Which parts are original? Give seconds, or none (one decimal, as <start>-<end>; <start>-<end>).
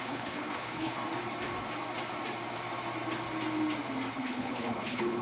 1.0-4.1